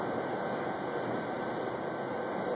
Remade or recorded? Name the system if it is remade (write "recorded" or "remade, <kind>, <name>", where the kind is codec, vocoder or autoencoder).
recorded